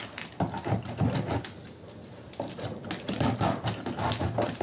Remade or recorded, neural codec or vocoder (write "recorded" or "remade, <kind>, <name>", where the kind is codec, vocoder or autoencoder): recorded